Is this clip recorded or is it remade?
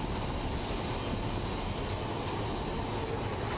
recorded